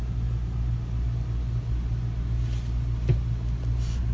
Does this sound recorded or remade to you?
recorded